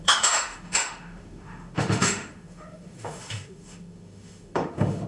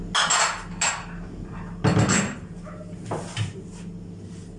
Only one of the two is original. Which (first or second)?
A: second